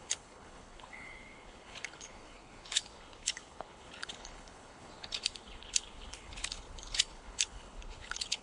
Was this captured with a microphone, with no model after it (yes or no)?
no